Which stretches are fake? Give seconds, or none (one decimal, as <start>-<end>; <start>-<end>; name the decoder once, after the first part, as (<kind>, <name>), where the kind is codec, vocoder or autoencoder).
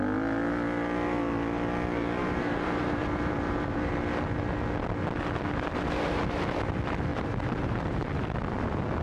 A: 2.2-3.9 (vocoder, BigVGAN v2); 7.1-8.1